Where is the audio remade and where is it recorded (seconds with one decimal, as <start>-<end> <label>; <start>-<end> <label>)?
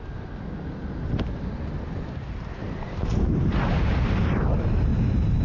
0.0-2.6 recorded; 2.6-4.2 remade; 4.2-4.9 recorded; 4.9-5.4 remade